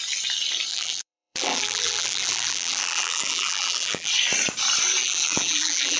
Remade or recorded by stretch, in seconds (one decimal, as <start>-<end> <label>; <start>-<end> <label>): 0.0-0.7 recorded; 0.7-4.1 remade; 4.1-5.0 recorded; 5.0-6.0 remade